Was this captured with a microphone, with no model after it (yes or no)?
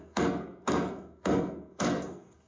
no